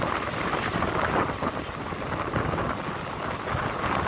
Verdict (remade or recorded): recorded